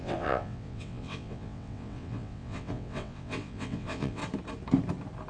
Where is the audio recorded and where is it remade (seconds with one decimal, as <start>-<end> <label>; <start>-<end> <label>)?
0.0-4.2 remade; 4.2-5.3 recorded